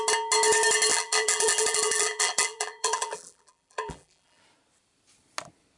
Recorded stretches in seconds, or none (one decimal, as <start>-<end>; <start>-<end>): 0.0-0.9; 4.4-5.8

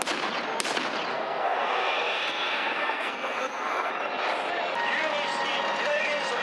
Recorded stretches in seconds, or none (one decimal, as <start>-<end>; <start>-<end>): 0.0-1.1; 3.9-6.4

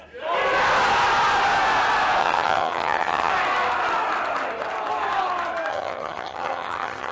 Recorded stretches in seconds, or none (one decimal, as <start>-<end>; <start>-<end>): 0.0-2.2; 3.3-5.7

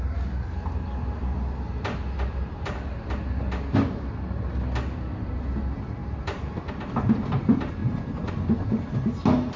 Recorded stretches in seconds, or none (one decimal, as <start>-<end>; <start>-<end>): 0.0-6.0; 6.7-9.6